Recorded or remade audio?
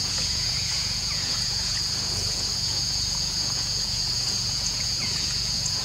remade